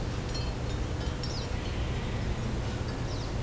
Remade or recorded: recorded